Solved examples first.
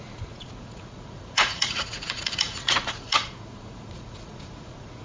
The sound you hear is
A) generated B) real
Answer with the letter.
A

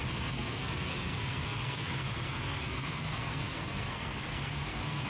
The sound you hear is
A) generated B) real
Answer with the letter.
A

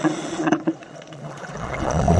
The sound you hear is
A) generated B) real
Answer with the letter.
A